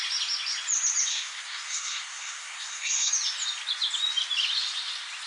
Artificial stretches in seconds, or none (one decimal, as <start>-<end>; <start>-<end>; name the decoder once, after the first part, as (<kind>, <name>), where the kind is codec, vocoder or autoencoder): 1.1-3.1 (codec, SNAC)